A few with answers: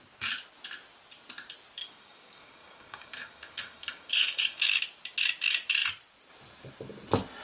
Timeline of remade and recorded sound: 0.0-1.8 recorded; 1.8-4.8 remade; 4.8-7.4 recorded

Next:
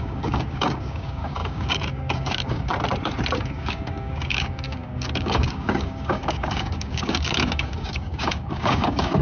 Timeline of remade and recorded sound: 0.0-2.7 remade; 2.7-3.4 recorded; 3.4-9.2 remade

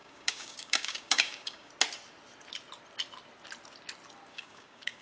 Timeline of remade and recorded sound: 0.0-1.7 remade; 1.7-4.3 recorded; 4.3-5.0 remade

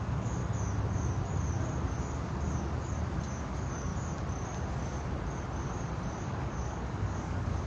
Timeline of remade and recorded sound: 0.0-0.4 remade; 0.4-3.3 recorded; 3.3-3.9 remade; 3.9-6.2 recorded; 6.2-7.7 remade

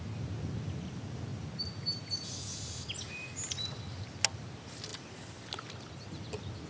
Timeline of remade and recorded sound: 0.0-6.7 recorded

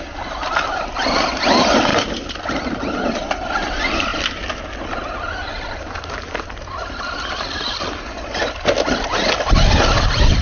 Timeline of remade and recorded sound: 0.0-10.4 recorded

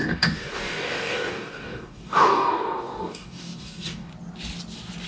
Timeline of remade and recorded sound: 0.0-4.1 remade; 4.1-5.1 recorded

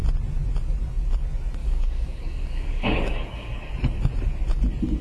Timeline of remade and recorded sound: 0.0-1.6 recorded; 1.6-3.7 remade; 3.7-5.0 recorded